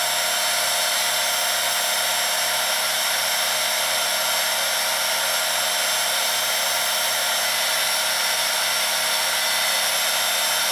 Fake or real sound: real